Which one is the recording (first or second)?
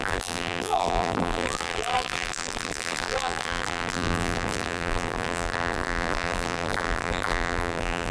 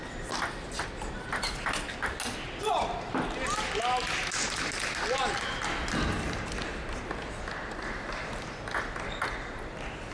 second